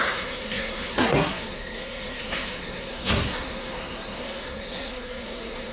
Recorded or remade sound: remade